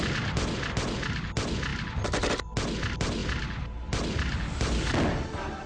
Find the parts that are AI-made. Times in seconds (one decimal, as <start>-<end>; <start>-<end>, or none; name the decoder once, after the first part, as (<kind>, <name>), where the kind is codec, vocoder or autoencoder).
none